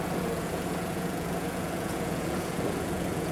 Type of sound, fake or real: fake